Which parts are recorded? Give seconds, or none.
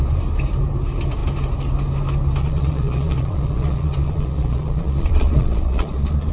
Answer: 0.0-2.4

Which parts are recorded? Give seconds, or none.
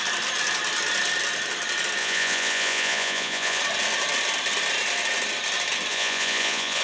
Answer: 0.0-2.0; 3.6-5.9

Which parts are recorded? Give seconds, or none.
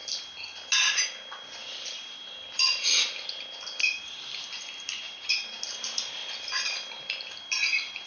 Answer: 0.0-8.1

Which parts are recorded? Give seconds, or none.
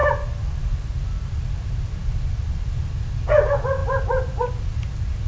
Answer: 0.0-5.3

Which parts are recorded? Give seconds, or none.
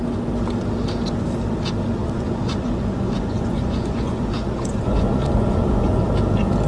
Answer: 0.0-2.0; 6.0-6.7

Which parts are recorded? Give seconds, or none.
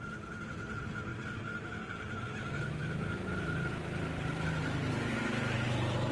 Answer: 0.0-6.1